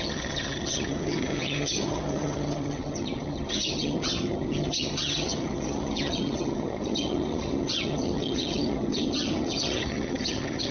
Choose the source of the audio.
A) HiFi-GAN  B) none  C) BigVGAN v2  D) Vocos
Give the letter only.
A